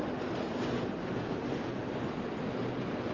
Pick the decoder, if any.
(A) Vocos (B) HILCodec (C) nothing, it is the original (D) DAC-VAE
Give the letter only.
C